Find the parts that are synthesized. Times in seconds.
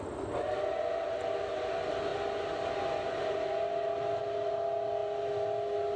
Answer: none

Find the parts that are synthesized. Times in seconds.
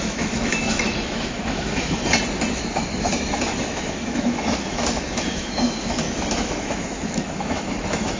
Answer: 0.0-2.0 (autoencoder, DAC-VAE); 2.5-8.2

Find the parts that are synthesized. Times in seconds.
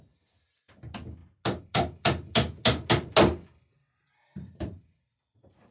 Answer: 4.3-5.7 (vocoder, BigVGAN v2)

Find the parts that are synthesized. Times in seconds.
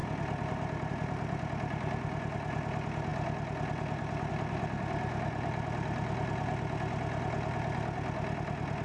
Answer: none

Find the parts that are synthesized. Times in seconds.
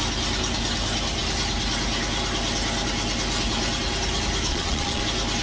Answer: 4.5-5.0 (vocoder, Vocos)